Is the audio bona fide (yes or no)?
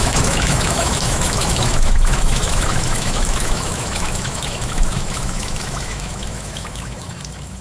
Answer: no